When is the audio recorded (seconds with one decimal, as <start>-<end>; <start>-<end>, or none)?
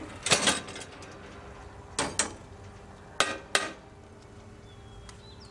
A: 0.0-5.5